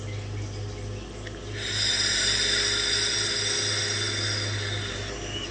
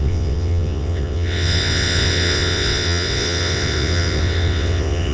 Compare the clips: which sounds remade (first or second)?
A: second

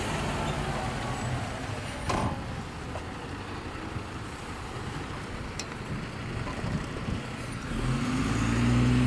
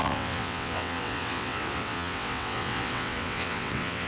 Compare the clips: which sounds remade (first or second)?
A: second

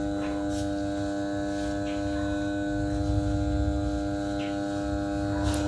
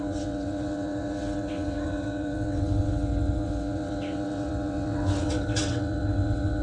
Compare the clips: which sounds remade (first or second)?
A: second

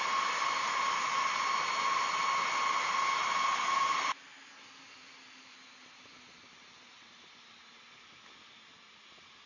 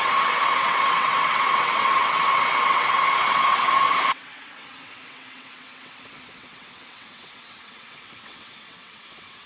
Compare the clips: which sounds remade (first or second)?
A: second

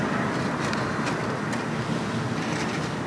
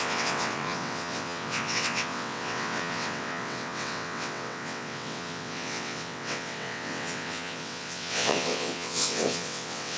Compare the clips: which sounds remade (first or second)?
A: second